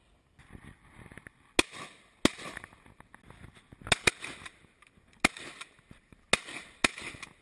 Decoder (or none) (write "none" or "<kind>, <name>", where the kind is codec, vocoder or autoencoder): none